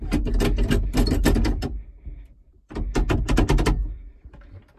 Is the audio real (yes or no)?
yes